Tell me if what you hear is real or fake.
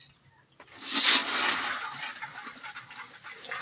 real